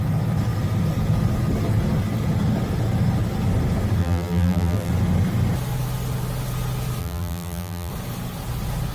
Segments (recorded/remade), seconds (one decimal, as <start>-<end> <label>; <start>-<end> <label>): 0.0-4.0 recorded; 4.0-4.9 remade; 4.9-7.0 recorded; 7.0-7.9 remade; 7.9-8.9 recorded